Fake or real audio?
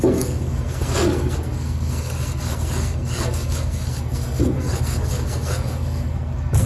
fake